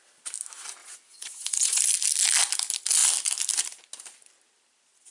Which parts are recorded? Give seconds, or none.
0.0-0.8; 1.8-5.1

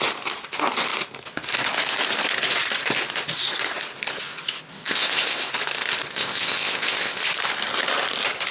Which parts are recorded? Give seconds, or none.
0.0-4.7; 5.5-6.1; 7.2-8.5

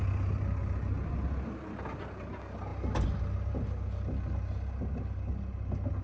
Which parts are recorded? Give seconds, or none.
0.0-6.0